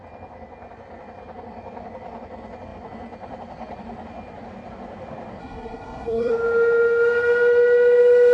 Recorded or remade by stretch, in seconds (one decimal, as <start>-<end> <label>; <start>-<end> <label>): 0.0-5.4 recorded; 5.4-6.3 remade; 6.3-8.3 recorded